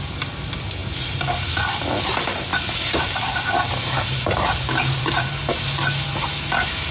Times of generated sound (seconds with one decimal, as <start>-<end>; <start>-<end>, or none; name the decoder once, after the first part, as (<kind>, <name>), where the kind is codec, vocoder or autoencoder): 2.5-5.7 (vocoder, BigVGAN v2)